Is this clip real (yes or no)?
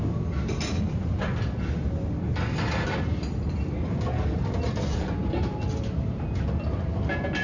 yes